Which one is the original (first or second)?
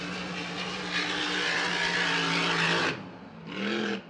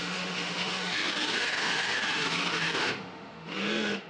first